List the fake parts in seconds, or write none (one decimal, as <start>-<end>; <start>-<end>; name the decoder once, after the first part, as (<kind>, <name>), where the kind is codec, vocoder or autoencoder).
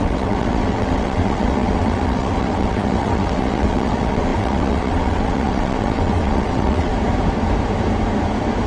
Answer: 0.0-6.9 (vocoder, WaveNeXt)